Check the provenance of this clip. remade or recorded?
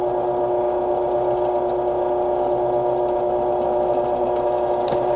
recorded